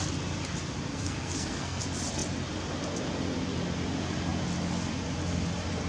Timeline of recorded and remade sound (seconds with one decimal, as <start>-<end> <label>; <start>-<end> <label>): 0.0-0.9 recorded; 0.9-1.8 remade; 1.8-5.9 recorded